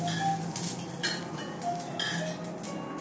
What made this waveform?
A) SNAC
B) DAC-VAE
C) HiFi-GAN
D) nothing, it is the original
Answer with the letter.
D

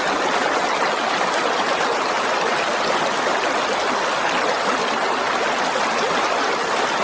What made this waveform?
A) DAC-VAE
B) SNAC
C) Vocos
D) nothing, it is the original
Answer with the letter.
D